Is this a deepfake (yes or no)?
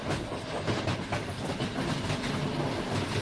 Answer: no